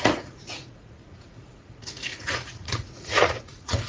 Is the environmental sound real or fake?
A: fake